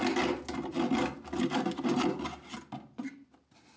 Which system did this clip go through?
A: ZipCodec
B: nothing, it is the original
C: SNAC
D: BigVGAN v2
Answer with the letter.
B